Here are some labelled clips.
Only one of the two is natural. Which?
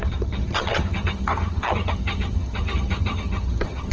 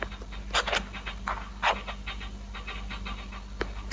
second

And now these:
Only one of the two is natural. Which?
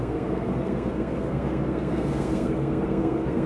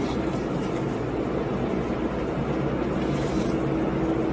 second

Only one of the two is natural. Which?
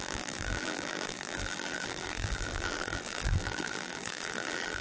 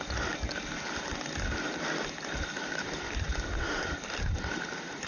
second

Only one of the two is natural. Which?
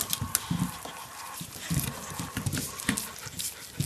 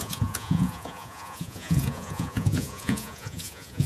first